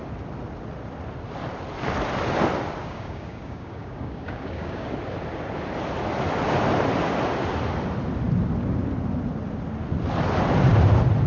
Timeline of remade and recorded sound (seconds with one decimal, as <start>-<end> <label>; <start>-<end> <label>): 0.0-2.8 recorded; 2.8-4.9 remade; 4.9-11.3 recorded